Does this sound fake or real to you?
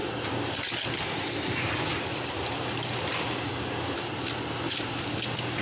real